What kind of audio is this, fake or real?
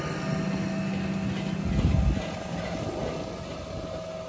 real